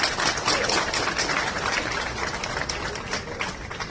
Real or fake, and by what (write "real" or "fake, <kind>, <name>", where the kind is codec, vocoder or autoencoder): real